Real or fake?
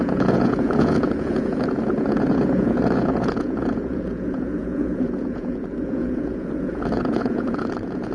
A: fake